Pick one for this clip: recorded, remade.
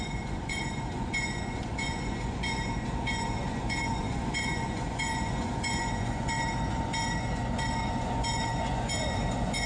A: remade